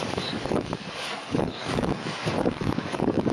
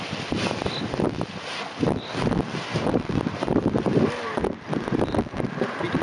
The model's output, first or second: first